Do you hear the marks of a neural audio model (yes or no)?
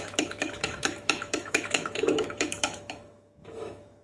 yes